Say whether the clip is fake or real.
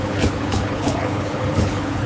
fake